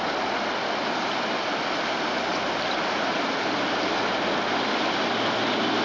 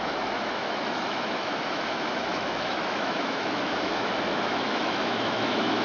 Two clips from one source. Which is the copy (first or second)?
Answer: second